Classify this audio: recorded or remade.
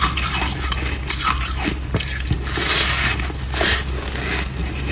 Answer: recorded